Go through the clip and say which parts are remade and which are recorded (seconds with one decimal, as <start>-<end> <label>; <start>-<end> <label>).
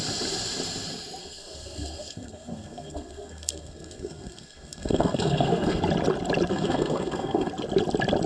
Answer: 0.0-1.2 recorded; 1.2-5.8 remade; 5.8-6.5 recorded; 6.5-7.5 remade; 7.5-8.3 recorded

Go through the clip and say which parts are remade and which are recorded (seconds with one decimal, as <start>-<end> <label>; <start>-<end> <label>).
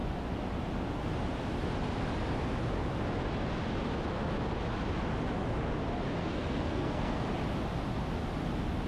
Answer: 0.0-6.2 recorded; 6.2-7.2 remade; 7.2-8.9 recorded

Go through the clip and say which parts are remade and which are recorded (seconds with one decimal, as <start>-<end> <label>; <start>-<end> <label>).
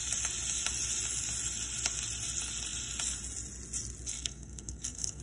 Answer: 0.0-4.1 recorded; 4.1-5.2 remade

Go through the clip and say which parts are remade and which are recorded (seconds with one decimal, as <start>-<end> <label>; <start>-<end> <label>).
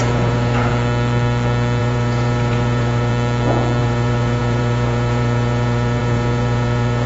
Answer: 0.0-0.7 remade; 0.7-1.8 recorded; 1.8-3.1 remade; 3.1-3.8 recorded; 3.8-7.1 remade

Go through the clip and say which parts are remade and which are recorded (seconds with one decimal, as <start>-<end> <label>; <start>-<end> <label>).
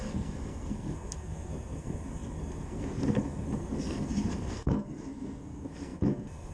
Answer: 0.0-6.5 remade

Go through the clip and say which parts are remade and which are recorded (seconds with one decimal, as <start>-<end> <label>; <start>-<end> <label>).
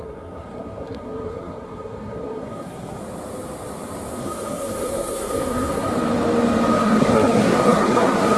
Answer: 0.0-3.0 remade; 3.0-4.2 recorded; 4.2-5.9 remade; 5.9-6.8 recorded; 6.8-8.4 remade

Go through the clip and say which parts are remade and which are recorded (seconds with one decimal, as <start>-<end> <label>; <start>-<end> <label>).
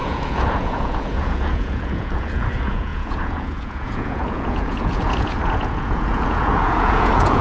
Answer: 0.0-7.4 remade